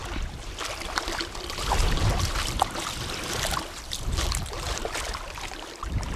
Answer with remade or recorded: remade